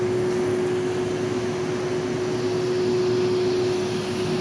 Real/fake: real